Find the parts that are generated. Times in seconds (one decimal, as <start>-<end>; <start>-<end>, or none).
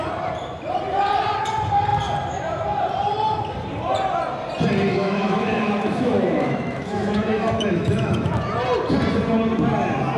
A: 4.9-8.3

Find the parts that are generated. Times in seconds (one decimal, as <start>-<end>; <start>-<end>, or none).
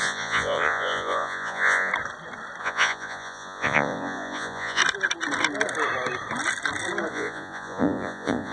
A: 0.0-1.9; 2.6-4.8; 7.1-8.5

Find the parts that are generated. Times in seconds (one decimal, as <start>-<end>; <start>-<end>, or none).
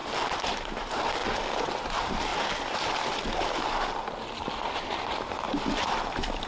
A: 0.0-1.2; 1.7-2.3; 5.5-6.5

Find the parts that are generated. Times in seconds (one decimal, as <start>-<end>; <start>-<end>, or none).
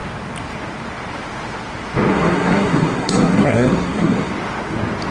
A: 2.1-4.3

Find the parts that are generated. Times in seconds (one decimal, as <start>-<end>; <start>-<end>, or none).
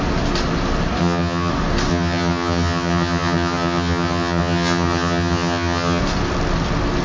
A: 1.0-1.5; 1.9-6.0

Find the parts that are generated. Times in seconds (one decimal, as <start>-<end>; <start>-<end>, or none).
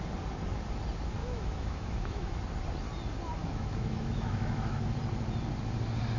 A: 1.2-2.4; 3.4-5.0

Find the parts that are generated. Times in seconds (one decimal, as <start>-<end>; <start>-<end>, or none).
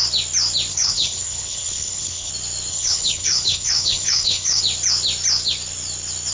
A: 0.7-2.3; 2.7-4.6